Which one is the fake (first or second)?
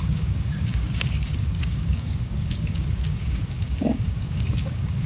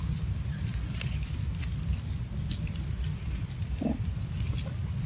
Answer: first